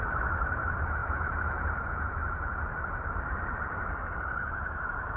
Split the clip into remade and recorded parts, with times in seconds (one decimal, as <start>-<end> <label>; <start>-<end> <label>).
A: 0.0-5.2 recorded